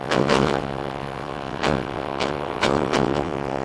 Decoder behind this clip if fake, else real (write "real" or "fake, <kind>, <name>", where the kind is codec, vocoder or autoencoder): fake, vocoder, WaveNeXt